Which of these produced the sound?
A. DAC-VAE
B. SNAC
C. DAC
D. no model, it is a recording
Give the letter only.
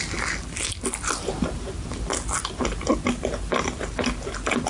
D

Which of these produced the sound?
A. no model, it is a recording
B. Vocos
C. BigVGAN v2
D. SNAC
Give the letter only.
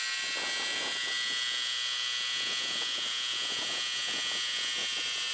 A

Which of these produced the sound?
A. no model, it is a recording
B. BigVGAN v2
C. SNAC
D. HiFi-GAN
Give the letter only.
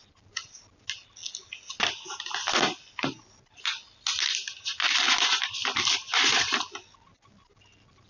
A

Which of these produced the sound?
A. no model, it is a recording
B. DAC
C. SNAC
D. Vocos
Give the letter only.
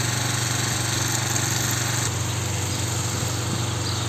A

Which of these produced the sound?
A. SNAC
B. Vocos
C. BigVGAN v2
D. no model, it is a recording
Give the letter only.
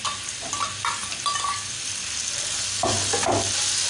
D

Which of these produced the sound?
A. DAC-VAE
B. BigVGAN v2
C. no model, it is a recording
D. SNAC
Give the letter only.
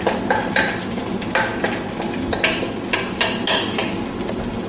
C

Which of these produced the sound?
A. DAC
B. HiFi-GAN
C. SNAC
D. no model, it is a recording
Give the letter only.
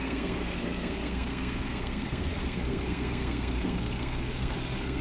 C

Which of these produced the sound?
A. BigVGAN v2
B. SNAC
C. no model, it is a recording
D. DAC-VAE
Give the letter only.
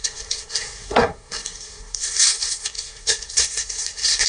B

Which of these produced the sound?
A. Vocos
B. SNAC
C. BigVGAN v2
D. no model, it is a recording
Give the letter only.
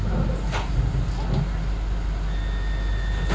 D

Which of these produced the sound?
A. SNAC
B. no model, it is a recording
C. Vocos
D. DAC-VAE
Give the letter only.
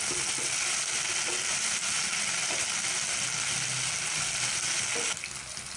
B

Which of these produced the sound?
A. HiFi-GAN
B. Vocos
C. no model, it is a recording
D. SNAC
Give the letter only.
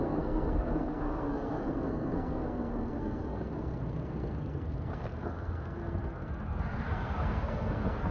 D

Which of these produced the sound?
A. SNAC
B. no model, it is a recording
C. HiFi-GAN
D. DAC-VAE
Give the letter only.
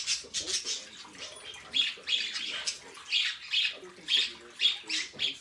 B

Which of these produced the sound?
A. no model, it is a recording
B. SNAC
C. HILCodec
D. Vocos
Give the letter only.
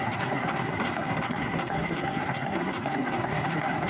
B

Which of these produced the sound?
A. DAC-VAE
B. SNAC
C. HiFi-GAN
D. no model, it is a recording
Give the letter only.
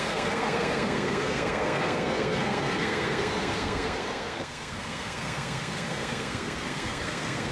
B